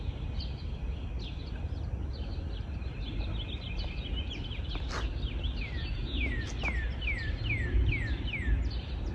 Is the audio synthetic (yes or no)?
no